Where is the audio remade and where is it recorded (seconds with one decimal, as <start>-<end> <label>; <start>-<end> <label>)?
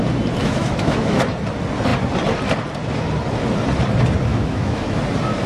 0.0-0.4 recorded; 0.4-1.2 remade; 1.2-4.3 recorded; 4.3-5.0 remade; 5.0-5.5 recorded